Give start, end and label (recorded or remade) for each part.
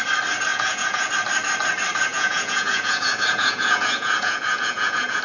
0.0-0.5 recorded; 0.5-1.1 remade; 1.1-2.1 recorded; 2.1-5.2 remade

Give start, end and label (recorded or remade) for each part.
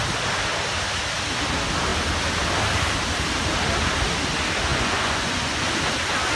0.0-4.7 recorded; 4.7-5.6 remade; 5.6-6.4 recorded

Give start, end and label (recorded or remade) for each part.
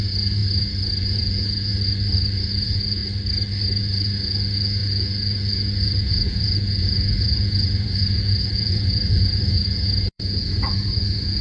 0.0-0.4 remade; 0.4-1.0 recorded; 1.0-1.7 remade; 1.7-2.4 recorded; 2.4-3.0 remade; 3.0-3.8 recorded; 3.8-11.4 remade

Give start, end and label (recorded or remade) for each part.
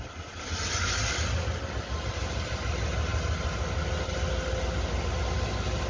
0.0-5.9 recorded